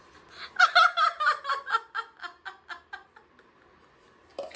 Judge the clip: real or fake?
real